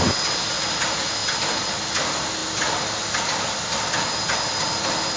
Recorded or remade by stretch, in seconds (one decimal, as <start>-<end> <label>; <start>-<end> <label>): 0.0-5.2 recorded